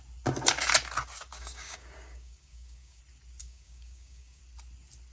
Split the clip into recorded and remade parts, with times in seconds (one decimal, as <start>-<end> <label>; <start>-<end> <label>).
0.0-1.3 recorded; 1.3-3.0 remade; 3.0-3.4 recorded; 3.4-4.4 remade; 4.4-5.1 recorded